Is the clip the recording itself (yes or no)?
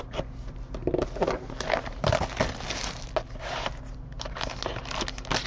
yes